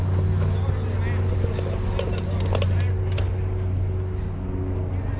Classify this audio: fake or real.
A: real